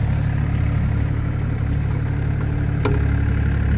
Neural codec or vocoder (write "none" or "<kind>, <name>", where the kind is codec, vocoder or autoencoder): none